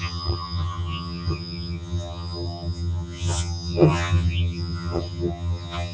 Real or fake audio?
fake